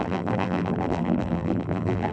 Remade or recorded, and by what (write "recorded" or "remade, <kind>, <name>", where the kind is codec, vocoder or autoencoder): remade, vocoder, BigVGAN v2